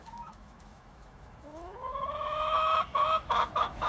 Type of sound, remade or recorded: remade